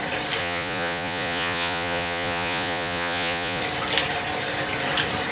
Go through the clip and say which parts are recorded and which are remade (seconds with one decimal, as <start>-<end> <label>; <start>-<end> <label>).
0.0-0.4 recorded; 0.4-3.6 remade; 3.6-5.3 recorded